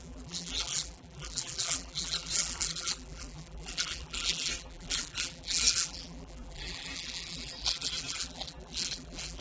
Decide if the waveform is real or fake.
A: fake